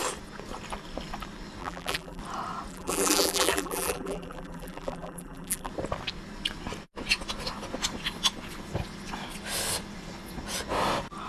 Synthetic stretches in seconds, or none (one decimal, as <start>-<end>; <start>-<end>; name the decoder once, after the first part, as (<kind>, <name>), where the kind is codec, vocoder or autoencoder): 1.6-2.2 (vocoder, BigVGAN v2); 2.7-5.7